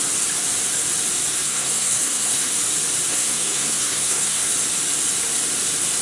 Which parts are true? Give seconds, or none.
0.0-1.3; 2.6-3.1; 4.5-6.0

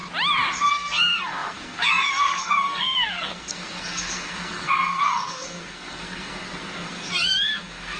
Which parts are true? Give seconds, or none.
0.0-0.7

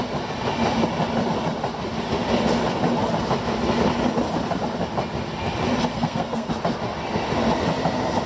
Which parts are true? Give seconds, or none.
0.0-5.9; 6.5-8.3

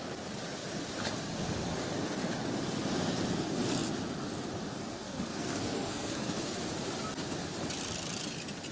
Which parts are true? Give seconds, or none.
0.0-4.7; 6.6-8.7

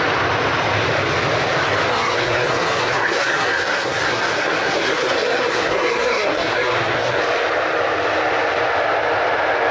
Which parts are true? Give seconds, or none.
0.0-1.9; 7.2-9.7